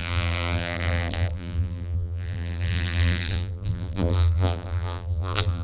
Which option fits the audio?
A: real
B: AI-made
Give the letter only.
B